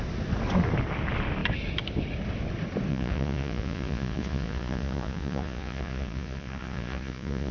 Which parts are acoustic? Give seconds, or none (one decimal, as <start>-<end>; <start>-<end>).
0.0-2.9